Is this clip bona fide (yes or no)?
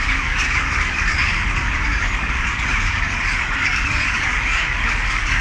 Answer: no